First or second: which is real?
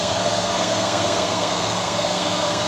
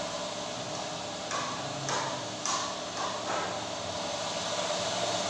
second